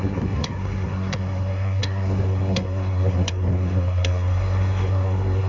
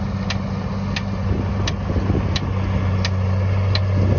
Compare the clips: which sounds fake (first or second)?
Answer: first